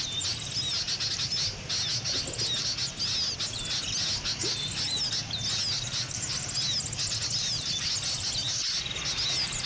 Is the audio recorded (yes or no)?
yes